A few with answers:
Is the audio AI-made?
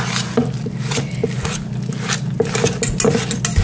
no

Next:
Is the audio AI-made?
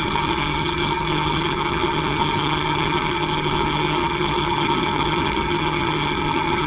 yes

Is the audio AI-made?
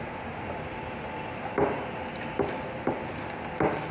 no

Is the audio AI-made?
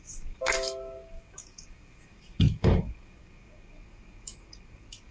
yes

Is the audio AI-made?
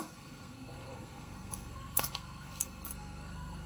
yes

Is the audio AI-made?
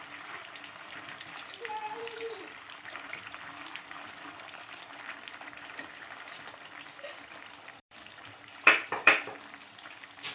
yes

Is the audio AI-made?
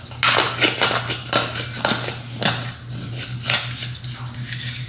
no